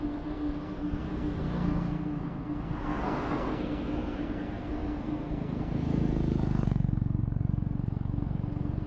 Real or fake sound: fake